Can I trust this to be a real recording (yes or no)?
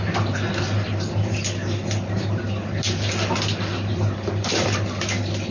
yes